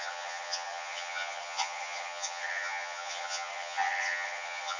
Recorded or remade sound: remade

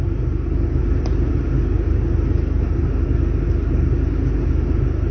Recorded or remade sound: recorded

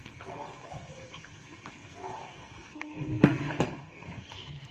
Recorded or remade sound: remade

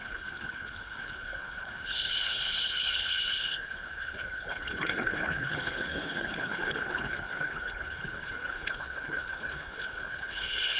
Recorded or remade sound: remade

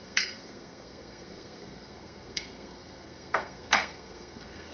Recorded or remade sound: remade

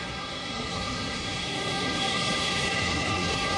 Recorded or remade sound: remade